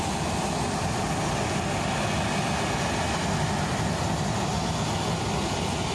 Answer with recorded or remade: recorded